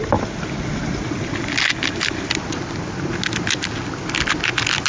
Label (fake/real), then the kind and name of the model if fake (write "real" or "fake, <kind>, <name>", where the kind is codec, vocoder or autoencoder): real